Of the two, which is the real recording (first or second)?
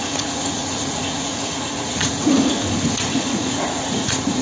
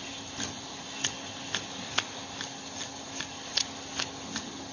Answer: second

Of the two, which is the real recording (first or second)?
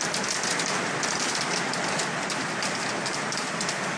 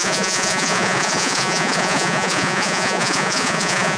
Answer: first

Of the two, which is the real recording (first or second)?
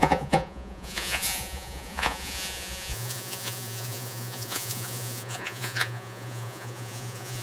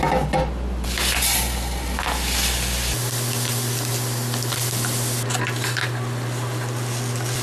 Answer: second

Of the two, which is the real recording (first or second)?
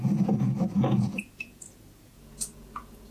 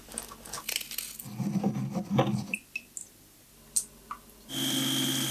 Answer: second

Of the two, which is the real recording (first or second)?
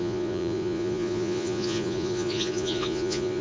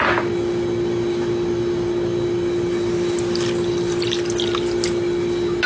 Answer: second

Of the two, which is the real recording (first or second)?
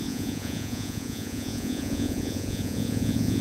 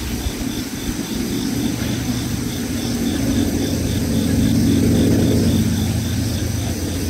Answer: second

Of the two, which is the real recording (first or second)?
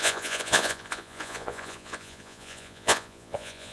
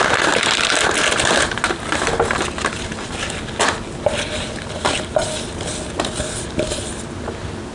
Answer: second